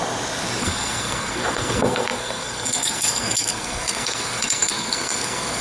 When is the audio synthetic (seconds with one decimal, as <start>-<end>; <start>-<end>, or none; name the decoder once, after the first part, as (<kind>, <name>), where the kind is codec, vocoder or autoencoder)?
0.6-5.6 (codec, SNAC)